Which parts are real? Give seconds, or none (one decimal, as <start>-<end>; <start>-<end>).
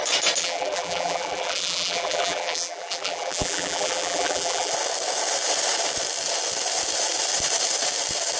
0.0-0.4; 4.7-8.4